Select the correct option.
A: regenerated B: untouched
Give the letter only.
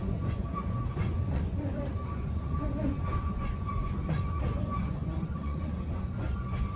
A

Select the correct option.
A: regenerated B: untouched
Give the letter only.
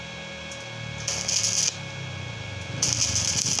B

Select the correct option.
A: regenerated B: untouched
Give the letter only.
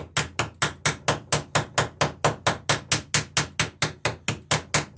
B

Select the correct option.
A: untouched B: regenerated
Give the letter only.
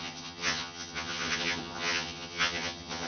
B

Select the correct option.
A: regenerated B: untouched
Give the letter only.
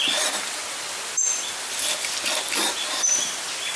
B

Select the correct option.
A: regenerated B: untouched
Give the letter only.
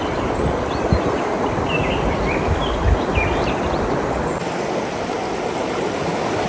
B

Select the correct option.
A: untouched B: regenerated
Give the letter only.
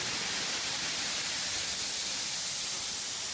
A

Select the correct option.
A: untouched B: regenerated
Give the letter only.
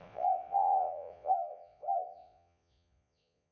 B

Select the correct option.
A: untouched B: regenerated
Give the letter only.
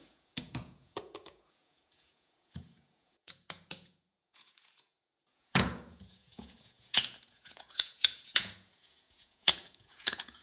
B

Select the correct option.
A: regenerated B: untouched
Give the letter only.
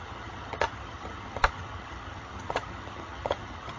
A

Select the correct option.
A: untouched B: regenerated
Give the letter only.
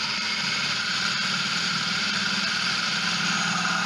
B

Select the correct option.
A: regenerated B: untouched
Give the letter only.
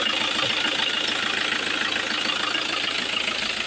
B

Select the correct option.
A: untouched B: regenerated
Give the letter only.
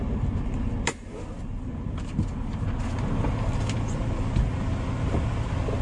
A